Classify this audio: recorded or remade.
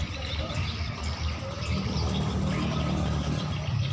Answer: recorded